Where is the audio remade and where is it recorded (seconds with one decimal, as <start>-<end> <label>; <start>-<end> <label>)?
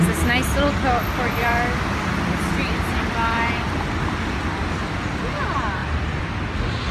0.0-1.4 recorded; 1.4-3.7 remade; 3.7-5.8 recorded; 5.8-6.5 remade; 6.5-6.9 recorded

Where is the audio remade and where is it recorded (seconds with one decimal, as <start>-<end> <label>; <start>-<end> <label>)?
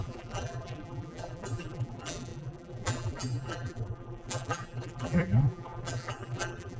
0.0-6.8 remade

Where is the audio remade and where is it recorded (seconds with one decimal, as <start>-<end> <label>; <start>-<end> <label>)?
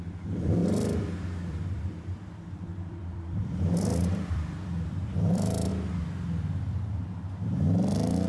0.0-5.7 remade; 5.7-8.3 recorded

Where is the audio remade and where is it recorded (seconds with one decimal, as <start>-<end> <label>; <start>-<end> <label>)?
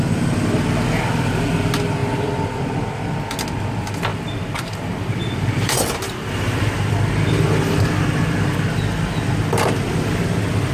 0.0-2.0 recorded; 2.0-2.6 remade; 2.6-4.1 recorded; 4.1-7.8 remade; 7.8-10.7 recorded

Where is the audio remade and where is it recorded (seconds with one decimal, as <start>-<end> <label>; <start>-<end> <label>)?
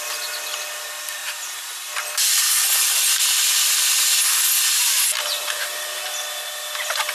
0.0-1.2 recorded; 1.2-1.9 remade; 1.9-4.8 recorded; 4.8-5.7 remade; 5.7-7.1 recorded